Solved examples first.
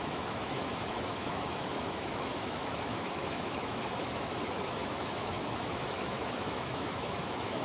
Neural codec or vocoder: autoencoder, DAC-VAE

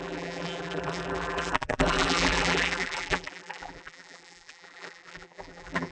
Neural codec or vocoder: vocoder, BigVGAN v2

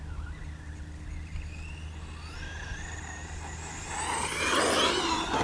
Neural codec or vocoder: none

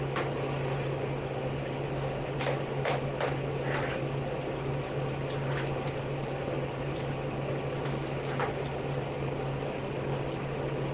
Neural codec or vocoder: none